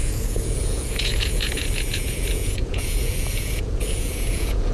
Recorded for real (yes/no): no